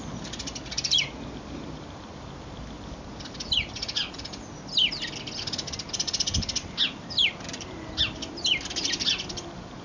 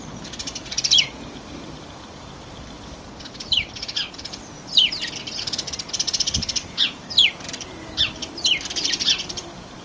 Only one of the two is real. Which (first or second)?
first